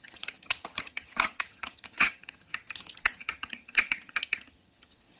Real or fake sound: fake